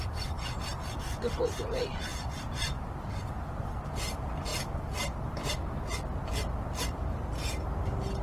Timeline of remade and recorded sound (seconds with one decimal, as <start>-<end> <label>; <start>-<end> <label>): 0.0-4.5 remade; 4.5-7.6 recorded; 7.6-8.2 remade